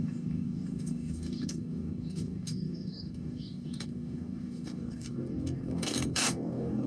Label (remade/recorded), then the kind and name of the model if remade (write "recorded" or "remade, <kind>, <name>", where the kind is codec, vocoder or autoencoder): remade, codec, DAC